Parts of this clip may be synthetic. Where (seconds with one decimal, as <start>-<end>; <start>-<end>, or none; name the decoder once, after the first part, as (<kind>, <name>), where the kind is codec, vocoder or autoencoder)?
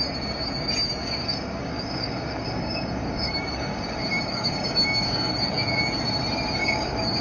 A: 1.0-5.3 (codec, DAC); 6.6-7.2